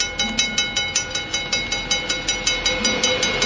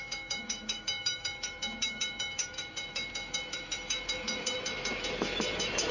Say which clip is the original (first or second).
first